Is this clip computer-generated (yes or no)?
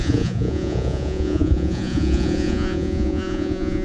yes